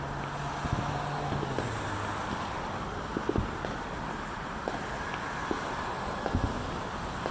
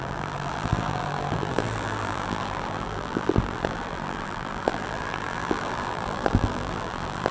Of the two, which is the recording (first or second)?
first